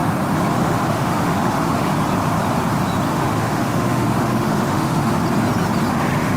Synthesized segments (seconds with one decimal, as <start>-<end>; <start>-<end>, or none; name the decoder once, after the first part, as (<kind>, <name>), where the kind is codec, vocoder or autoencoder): 0.5-1.9 (autoencoder, DAC-VAE); 3.1-5.2; 5.9-6.4